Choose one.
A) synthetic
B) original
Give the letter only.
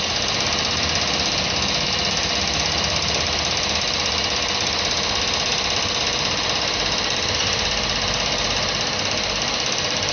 B